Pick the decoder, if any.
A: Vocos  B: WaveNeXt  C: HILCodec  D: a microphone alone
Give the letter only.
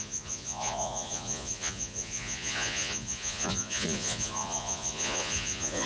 A